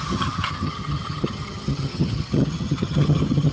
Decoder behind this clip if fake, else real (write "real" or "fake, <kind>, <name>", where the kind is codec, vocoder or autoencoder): fake, vocoder, HiFi-GAN